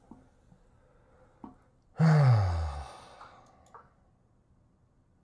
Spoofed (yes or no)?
no